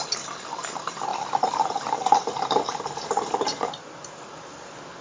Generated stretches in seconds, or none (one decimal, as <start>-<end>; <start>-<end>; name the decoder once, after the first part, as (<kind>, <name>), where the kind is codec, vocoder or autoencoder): 1.1-4.1 (vocoder, BigVGAN v2)